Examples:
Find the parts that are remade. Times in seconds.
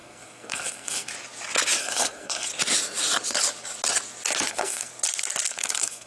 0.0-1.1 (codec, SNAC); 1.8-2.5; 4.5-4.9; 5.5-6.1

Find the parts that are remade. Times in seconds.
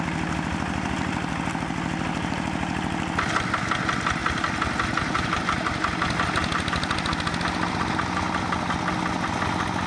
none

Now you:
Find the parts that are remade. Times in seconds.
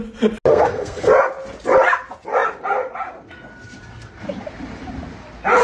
0.5-1.1 (codec, SNAC)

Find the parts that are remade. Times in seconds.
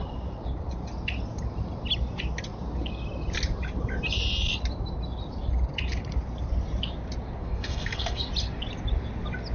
7.4-8.3 (codec, SNAC)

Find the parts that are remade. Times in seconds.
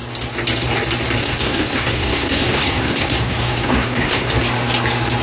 1.2-4.3 (codec, SNAC)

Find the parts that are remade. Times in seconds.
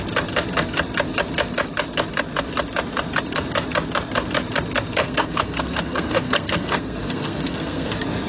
5.0-7.9 (codec, SNAC)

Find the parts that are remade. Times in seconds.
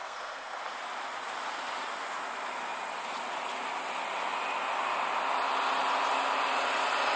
0.0-0.6 (codec, SNAC)